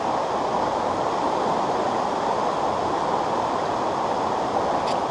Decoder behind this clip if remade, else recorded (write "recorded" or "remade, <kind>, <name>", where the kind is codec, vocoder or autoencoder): recorded